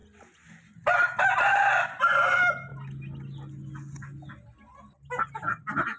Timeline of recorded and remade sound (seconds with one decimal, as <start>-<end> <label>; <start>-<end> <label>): 0.0-6.0 recorded